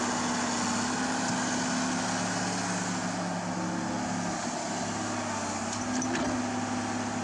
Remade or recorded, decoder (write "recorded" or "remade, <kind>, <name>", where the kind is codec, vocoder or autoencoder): recorded